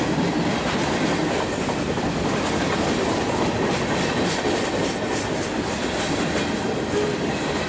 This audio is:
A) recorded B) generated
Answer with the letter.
A